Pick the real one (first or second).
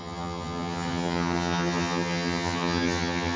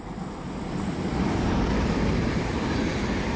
second